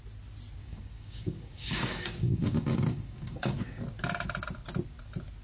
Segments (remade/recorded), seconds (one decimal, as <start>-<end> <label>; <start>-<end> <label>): 0.0-0.6 recorded; 0.6-3.8 remade; 3.8-5.4 recorded